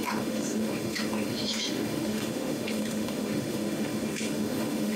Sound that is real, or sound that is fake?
fake